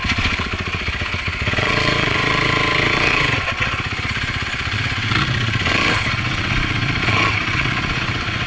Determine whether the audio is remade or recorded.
remade